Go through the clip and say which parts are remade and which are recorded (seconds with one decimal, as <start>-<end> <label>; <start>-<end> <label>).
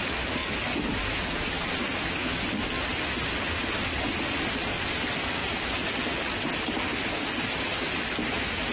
0.0-5.4 recorded; 5.4-5.9 remade; 5.9-8.7 recorded